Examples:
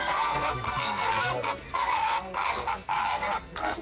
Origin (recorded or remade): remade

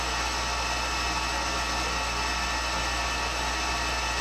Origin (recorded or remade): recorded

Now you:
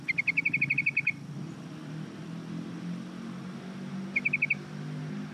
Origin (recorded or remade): recorded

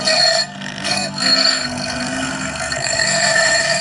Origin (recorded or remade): remade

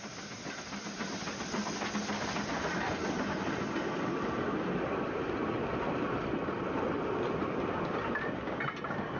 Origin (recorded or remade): recorded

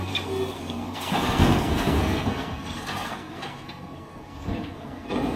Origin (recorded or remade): remade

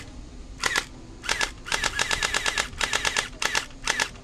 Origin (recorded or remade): recorded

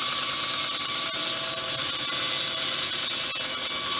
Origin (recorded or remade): recorded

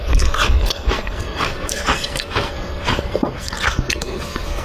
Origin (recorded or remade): remade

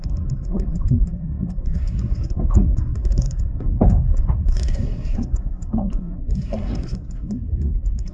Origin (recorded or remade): remade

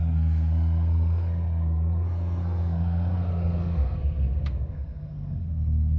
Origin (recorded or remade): remade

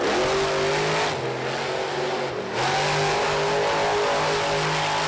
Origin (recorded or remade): recorded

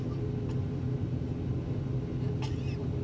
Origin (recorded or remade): recorded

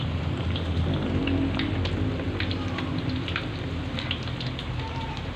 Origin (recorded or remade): recorded